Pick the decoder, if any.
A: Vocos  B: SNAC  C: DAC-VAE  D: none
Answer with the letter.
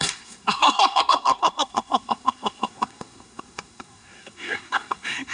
B